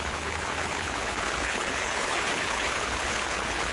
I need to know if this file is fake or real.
fake